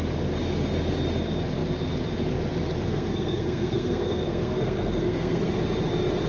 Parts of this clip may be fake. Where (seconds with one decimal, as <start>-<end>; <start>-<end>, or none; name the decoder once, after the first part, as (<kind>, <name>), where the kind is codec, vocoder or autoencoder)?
2.9-5.5 (codec, SNAC)